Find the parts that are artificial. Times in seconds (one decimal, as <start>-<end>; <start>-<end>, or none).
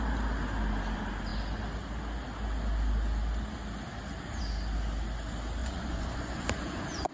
5.6-7.1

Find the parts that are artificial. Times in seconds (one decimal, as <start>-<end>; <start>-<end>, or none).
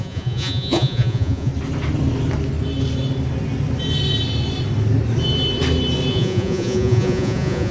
0.0-1.5; 6.1-7.7